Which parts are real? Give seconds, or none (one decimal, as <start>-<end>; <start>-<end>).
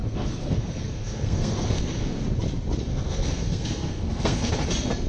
2.2-2.9; 4.5-5.1